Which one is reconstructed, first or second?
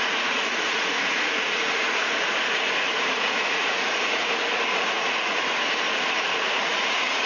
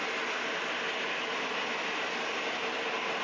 first